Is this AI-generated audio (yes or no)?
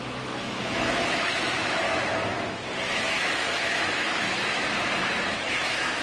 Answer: yes